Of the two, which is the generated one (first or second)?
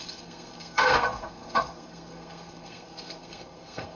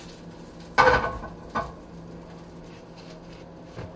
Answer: first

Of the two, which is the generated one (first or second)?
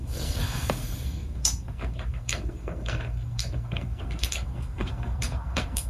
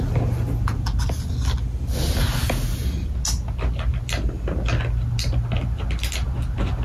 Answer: first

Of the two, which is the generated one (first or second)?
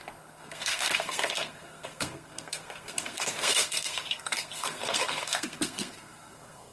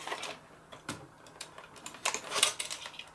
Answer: first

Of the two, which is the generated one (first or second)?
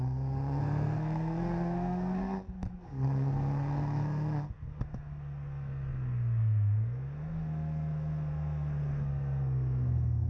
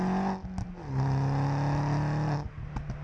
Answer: first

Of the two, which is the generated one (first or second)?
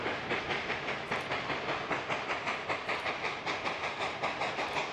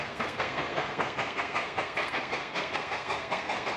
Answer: second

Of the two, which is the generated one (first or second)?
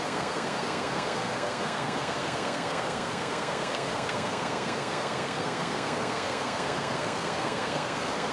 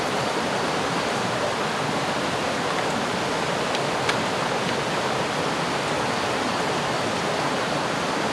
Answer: first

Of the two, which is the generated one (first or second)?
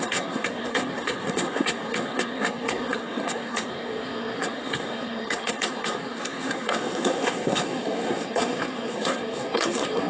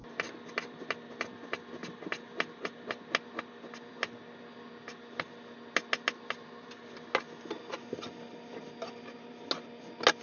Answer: first